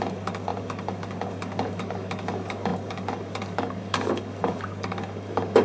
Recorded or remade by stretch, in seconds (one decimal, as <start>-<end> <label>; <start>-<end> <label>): 0.0-5.6 remade

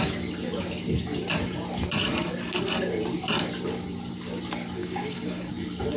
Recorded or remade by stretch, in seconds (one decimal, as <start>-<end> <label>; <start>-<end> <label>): 0.0-4.8 recorded; 4.8-5.5 remade; 5.5-6.0 recorded

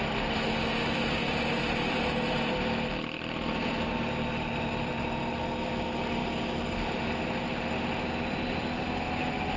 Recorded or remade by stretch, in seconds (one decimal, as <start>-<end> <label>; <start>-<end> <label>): 0.0-9.6 recorded

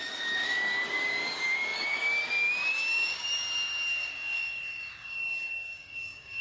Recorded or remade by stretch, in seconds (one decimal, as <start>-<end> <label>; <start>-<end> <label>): 0.0-6.4 remade

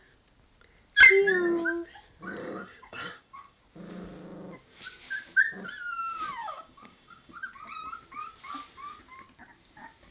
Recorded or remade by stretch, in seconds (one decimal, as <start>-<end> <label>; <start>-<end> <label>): 0.0-2.4 recorded; 2.4-3.6 remade; 3.6-6.4 recorded; 6.4-7.4 remade; 7.4-10.1 recorded

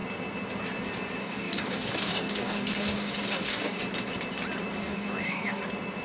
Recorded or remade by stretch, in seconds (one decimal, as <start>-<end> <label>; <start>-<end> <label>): 0.0-1.2 recorded; 1.2-3.8 remade; 3.8-4.8 recorded; 4.8-5.6 remade; 5.6-6.0 recorded

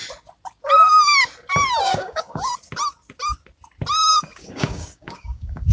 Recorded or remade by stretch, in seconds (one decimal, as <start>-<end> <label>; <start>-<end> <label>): 0.0-1.8 recorded; 1.8-2.5 remade; 2.5-4.1 recorded; 4.1-5.7 remade

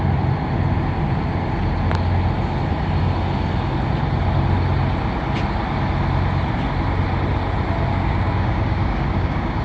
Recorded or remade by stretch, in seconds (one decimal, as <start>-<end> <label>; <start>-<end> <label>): 0.0-7.9 recorded; 7.9-9.6 remade